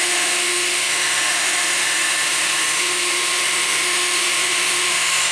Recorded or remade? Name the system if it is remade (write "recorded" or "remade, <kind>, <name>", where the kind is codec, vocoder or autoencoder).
remade, autoencoder, DAC-VAE